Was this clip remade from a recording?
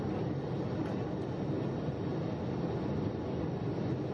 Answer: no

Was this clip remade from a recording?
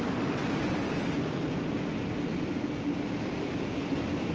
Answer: no